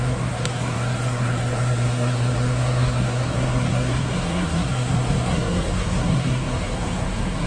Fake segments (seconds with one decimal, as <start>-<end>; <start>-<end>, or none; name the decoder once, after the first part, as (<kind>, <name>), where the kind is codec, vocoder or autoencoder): 0.0-7.5 (codec, SNAC)